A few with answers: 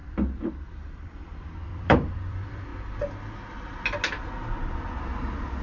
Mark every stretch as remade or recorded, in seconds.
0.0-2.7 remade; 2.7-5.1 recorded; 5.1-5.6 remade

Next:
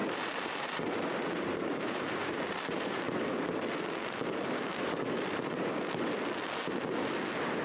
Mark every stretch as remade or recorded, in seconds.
0.0-3.0 remade; 3.0-7.6 recorded

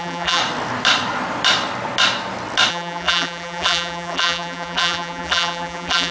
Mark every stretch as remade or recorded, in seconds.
0.0-0.4 remade; 0.4-2.7 recorded; 2.7-6.1 remade

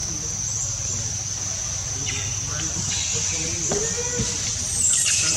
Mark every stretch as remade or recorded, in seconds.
0.0-2.6 recorded; 2.6-5.4 remade

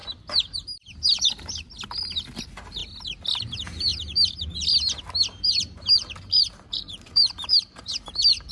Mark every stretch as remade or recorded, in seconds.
0.0-2.4 recorded; 2.4-2.8 remade; 2.8-3.4 recorded; 3.4-3.9 remade; 3.9-5.5 recorded; 5.5-8.5 remade